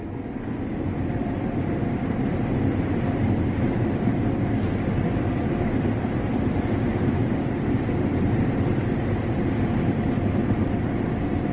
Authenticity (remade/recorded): recorded